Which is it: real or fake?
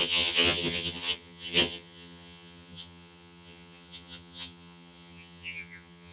fake